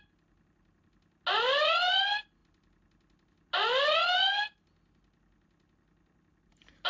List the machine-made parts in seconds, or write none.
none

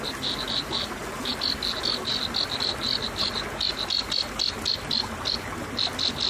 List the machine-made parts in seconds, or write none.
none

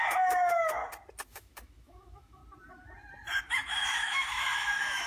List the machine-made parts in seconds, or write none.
0.0-0.8 (autoencoder, DAC-VAE); 1.3-2.4; 3.4-5.1

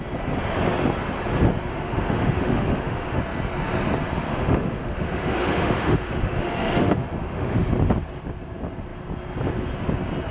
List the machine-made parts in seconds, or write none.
1.7-3.2 (autoencoder, DAC-VAE); 4.3-7.7

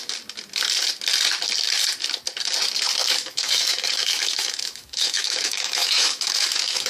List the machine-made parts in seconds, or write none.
3.0-6.9 (autoencoder, DAC-VAE)

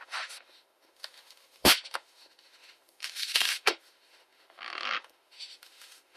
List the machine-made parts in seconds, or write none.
0.0-6.2 (autoencoder, DAC-VAE)

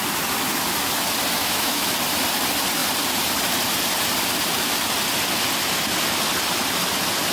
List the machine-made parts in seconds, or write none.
1.4-1.9 (autoencoder, DAC-VAE)